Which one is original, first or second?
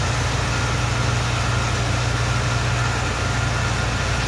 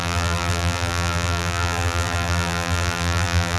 first